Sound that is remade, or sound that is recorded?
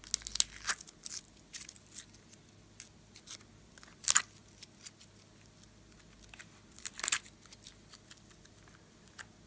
recorded